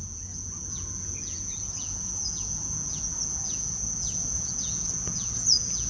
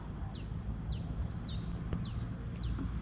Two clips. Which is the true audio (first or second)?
second